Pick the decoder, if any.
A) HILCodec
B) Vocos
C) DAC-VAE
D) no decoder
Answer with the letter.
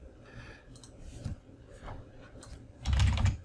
D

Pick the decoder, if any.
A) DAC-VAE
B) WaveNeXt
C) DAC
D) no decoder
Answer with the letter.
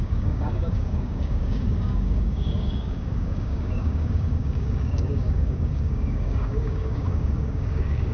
C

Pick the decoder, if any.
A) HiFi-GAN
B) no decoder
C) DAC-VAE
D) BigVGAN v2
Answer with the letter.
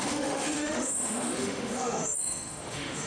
C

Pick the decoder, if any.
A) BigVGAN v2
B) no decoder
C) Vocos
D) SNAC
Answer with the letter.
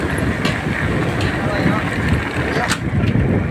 B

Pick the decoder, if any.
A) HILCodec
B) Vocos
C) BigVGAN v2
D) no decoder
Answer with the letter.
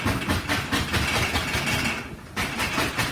D